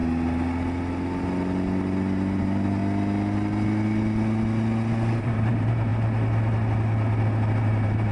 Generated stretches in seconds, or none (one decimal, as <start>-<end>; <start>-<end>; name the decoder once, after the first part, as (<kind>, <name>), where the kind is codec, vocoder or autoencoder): 2.4-2.8 (vocoder, BigVGAN v2); 5.2-5.9; 7.6-8.1